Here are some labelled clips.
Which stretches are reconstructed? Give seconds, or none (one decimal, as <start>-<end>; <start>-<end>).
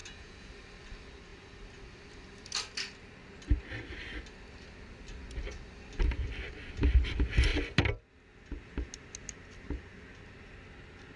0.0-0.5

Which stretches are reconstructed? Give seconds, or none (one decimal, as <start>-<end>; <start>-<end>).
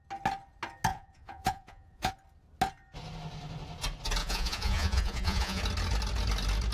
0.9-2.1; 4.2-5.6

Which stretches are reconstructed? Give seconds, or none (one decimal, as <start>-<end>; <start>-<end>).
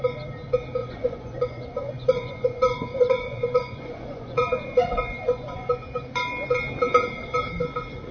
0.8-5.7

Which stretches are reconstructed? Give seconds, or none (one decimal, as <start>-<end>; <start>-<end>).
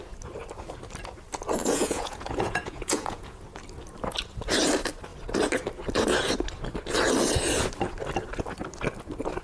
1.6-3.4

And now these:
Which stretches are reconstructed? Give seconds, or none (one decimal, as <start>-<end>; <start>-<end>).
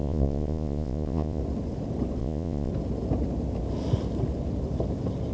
0.0-1.4; 2.2-2.7